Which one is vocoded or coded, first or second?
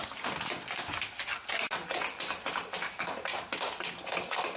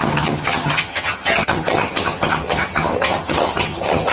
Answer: second